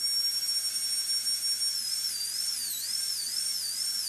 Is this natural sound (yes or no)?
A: yes